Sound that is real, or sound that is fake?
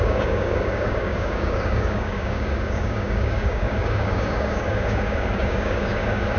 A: fake